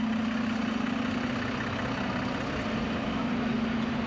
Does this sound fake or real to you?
real